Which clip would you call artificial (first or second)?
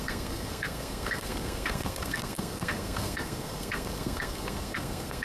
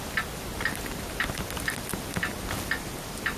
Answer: first